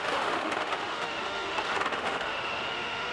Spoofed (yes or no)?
yes